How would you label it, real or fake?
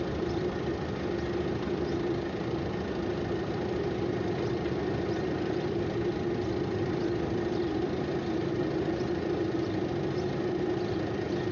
fake